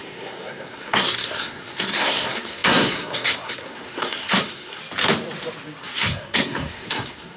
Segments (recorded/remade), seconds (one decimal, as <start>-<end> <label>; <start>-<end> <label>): 0.0-4.8 remade; 4.8-5.8 recorded; 5.8-7.4 remade